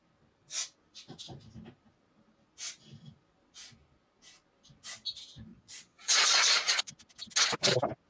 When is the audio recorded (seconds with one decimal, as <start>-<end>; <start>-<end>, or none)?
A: 0.0-5.5; 6.9-8.1